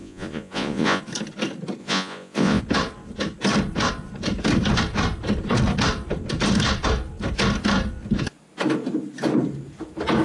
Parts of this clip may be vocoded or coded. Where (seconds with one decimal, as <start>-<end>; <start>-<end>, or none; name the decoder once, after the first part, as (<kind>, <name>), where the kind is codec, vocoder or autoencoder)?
0.0-1.0 (vocoder, Vocos); 1.8-2.6